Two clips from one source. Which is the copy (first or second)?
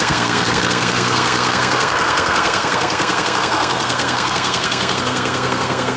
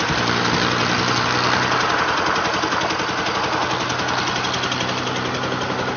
first